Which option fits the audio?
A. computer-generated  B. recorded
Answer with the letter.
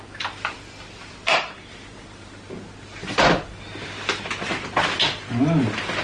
B